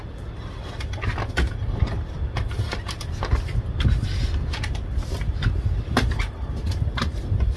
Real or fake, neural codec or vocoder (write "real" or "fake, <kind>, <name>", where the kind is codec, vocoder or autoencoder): real